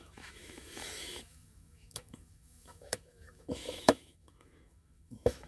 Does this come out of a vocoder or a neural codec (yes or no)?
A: yes